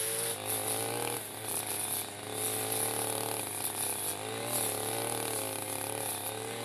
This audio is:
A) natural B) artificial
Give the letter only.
A